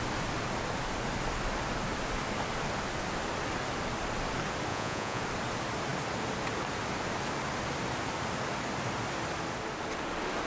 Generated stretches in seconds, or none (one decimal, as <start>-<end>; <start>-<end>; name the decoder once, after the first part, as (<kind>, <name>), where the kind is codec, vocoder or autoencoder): 4.7-5.2 (vocoder, Vocos)